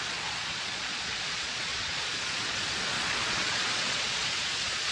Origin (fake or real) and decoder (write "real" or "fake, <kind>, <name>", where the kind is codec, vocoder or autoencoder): fake, vocoder, Vocos